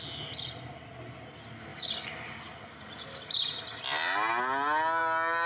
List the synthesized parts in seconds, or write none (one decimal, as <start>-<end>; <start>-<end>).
none